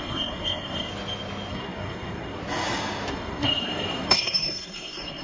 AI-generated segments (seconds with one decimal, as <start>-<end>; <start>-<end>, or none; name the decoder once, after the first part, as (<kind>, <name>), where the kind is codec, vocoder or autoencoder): 0.0-0.9 (codec, SNAC); 1.5-2.4; 3.1-5.2